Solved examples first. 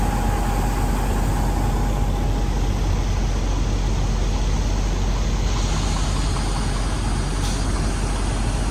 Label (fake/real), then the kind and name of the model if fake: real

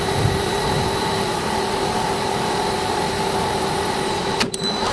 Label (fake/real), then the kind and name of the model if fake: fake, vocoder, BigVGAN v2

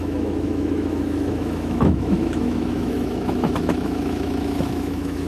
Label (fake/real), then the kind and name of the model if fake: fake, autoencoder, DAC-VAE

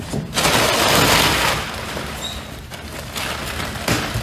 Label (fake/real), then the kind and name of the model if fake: real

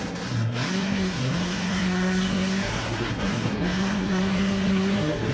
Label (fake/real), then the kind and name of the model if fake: fake, codec, SNAC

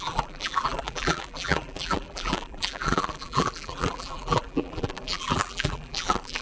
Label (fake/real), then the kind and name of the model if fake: fake, vocoder, BigVGAN v2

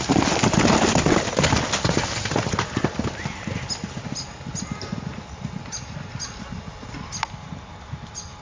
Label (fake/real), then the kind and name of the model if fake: real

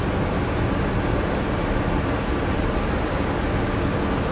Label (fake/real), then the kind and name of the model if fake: real